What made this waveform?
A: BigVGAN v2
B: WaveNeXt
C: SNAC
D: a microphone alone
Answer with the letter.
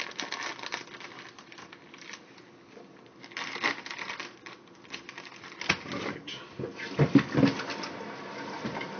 D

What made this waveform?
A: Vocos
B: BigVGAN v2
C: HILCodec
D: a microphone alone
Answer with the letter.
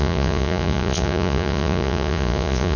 A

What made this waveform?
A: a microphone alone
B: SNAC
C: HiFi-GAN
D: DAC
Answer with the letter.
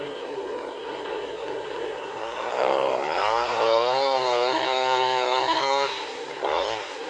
B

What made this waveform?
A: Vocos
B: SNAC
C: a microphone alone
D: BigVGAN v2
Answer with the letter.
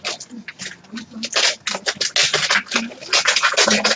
C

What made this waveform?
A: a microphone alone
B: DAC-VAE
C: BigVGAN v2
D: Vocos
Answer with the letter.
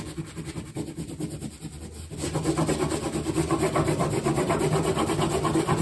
A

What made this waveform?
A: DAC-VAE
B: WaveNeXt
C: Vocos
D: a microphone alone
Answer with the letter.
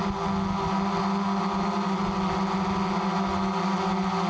D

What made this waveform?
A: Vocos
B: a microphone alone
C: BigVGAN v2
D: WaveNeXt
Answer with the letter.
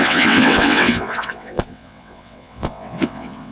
D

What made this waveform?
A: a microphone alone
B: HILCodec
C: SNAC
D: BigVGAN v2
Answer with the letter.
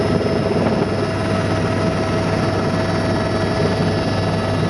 A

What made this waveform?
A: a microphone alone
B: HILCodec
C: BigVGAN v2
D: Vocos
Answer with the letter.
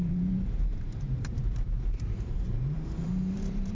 C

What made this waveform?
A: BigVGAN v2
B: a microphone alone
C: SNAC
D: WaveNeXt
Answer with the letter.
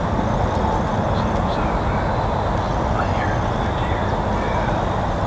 B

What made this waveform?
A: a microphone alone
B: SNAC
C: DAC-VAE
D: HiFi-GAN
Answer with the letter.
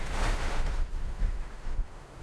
C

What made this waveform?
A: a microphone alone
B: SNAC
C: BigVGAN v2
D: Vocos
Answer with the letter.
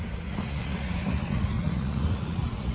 D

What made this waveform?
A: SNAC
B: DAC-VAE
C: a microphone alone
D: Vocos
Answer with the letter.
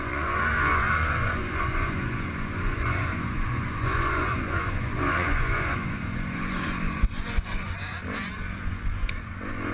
D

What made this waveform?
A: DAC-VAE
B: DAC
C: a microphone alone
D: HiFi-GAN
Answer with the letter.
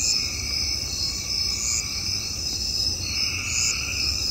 C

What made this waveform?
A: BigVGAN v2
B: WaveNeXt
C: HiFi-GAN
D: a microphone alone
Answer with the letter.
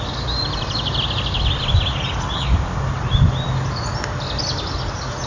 D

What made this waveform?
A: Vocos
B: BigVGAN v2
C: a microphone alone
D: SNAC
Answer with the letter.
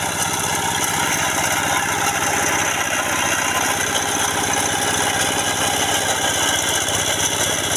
C